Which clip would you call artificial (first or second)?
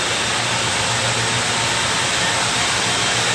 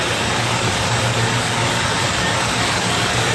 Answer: second